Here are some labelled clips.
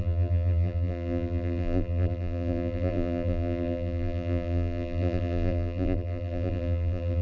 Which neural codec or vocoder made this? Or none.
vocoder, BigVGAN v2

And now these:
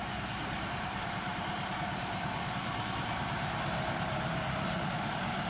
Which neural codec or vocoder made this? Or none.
vocoder, BigVGAN v2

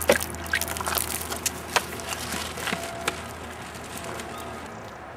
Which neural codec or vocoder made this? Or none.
none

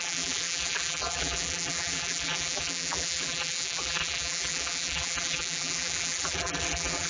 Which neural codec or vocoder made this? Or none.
vocoder, BigVGAN v2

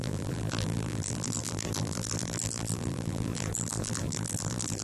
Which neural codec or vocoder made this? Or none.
vocoder, BigVGAN v2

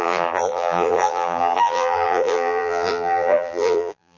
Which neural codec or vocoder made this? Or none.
vocoder, BigVGAN v2